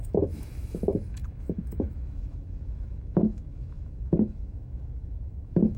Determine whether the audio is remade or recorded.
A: remade